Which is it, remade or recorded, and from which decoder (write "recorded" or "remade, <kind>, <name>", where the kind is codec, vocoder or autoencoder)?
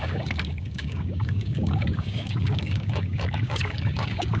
remade, codec, DAC